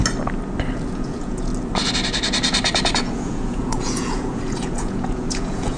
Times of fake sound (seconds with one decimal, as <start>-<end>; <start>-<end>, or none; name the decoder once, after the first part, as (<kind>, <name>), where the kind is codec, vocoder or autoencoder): 0.9-1.5 (vocoder, Vocos); 3.0-5.8

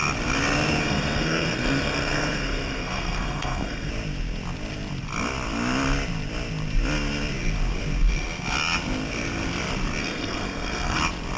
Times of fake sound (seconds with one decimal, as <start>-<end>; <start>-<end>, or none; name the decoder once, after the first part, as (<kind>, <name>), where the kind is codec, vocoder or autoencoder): 0.8-3.9 (codec, SNAC); 10.0-11.0